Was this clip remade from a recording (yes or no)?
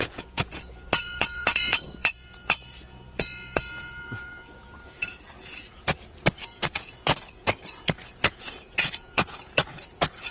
yes